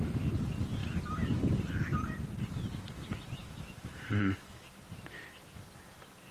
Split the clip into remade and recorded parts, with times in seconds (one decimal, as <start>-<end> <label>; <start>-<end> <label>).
0.0-3.4 recorded; 3.4-4.6 remade; 4.6-6.3 recorded